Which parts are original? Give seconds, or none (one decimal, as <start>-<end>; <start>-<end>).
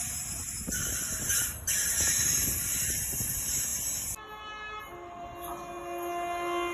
0.0-6.7